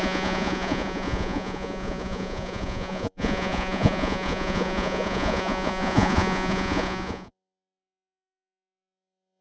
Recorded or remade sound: remade